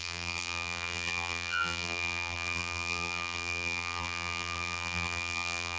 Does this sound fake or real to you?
fake